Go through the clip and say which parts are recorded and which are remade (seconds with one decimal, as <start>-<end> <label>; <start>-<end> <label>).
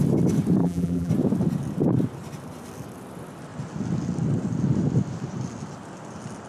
0.0-0.6 recorded; 0.6-1.1 remade; 1.1-6.5 recorded